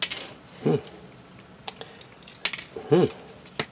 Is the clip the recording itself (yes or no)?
yes